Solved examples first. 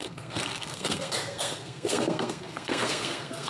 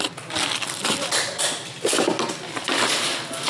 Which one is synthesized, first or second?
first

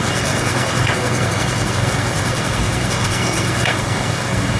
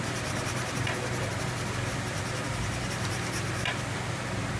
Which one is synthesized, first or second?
first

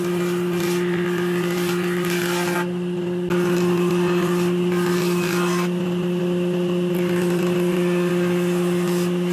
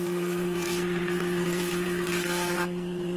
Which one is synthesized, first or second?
second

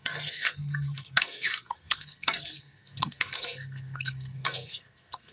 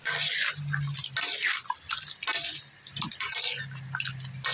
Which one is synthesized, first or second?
first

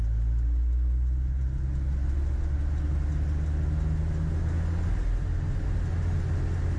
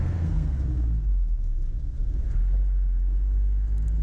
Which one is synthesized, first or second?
second